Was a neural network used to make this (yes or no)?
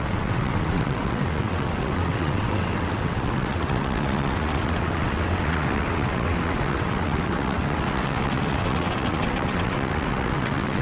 yes